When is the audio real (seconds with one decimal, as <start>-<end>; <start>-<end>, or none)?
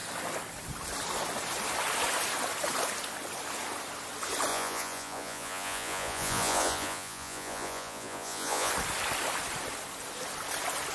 0.0-4.5; 8.7-10.9